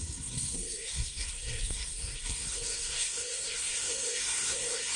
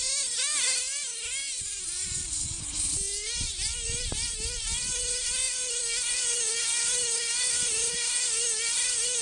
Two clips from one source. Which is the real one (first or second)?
second